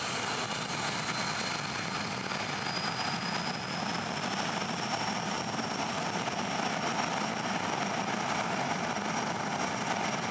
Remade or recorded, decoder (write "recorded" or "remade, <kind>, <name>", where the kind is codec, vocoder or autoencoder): remade, vocoder, BigVGAN v2